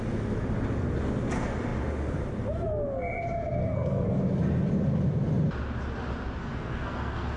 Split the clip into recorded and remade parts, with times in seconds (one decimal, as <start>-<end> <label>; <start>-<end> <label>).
0.0-3.6 recorded; 3.6-4.2 remade; 4.2-6.4 recorded; 6.4-7.4 remade